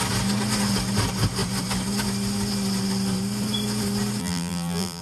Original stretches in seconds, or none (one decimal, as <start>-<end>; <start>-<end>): 0.0-4.2